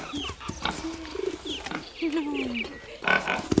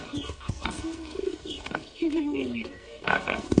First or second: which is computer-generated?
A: second